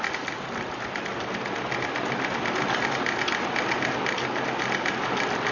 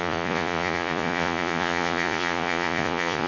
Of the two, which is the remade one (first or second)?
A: second